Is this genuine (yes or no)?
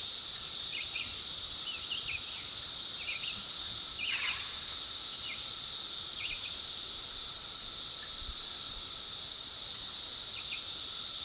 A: yes